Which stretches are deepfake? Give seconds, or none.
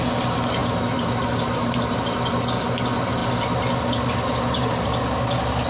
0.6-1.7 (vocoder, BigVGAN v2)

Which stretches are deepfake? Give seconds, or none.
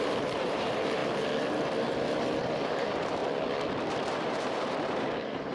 0.0-1.0 (vocoder, BigVGAN v2); 2.4-3.2; 4.0-5.5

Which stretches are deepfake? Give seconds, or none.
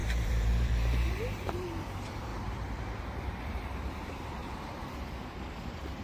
0.0-6.0 (vocoder, BigVGAN v2)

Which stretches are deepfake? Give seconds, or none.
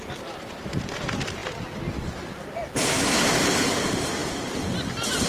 none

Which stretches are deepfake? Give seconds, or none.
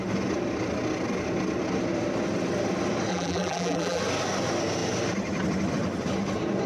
3.1-4.0 (vocoder, BigVGAN v2)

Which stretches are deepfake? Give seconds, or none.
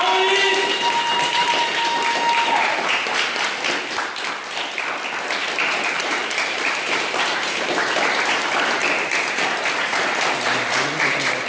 0.0-3.1 (vocoder, BigVGAN v2); 5.6-8.8; 9.3-11.5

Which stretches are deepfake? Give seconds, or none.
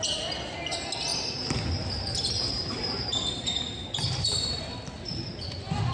1.1-4.6 (vocoder, BigVGAN v2)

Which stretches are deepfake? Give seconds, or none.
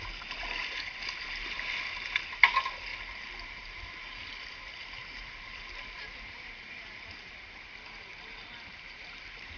2.9-7.3 (vocoder, BigVGAN v2); 8.1-9.6